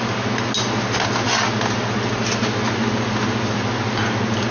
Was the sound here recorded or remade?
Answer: recorded